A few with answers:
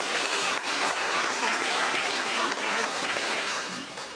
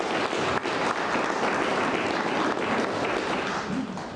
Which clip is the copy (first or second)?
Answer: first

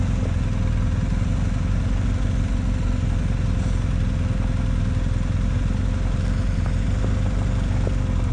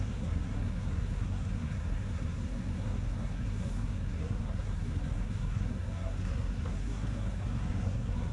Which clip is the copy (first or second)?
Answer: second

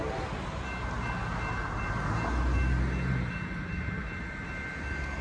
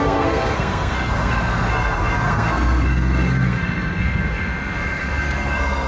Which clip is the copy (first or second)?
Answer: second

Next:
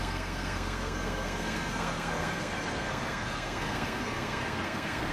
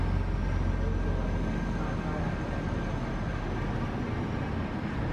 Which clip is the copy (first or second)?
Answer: first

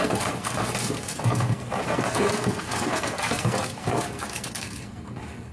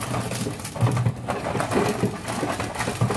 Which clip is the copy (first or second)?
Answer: first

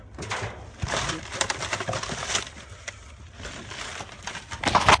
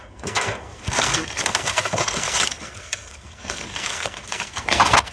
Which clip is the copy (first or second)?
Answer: second